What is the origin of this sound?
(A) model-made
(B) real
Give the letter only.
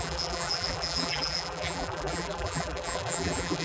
A